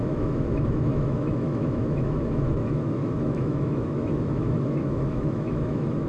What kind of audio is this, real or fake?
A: fake